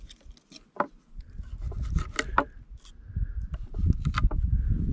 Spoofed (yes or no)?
no